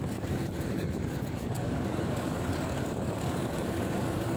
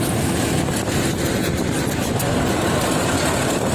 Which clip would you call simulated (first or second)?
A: first